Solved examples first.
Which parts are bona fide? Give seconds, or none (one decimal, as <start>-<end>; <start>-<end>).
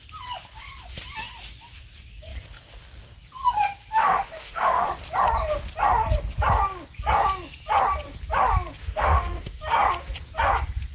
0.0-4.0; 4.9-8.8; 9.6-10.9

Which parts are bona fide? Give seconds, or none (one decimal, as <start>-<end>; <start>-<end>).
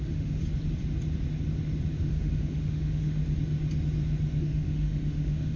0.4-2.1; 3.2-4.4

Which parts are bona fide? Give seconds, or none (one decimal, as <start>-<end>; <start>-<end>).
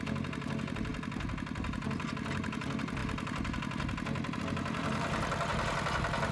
0.0-6.3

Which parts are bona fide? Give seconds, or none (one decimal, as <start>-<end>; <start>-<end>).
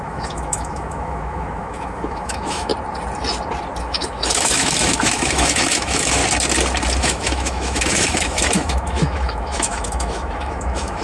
2.7-3.8; 6.2-7.0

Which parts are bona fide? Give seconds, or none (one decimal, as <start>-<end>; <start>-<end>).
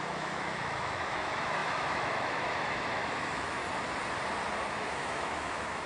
3.6-4.7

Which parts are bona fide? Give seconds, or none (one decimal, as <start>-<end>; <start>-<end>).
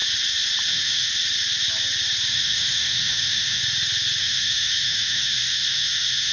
0.0-0.7; 1.1-2.3; 3.6-4.2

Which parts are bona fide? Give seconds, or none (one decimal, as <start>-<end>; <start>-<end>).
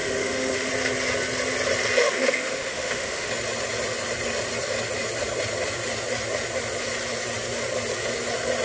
0.7-2.0; 3.3-8.6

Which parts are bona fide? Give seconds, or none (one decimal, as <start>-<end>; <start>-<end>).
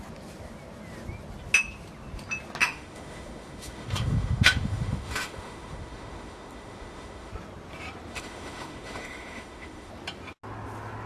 0.0-2.6; 7.3-8.1; 9.9-11.1